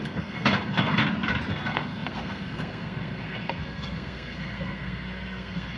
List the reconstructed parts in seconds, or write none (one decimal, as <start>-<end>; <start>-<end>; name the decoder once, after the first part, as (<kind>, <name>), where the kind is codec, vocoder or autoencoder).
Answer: 0.0-1.0 (codec, SNAC); 1.5-5.8